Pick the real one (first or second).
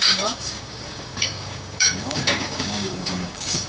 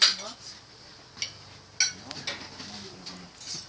second